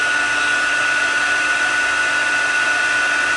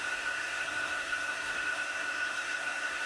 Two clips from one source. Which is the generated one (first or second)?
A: second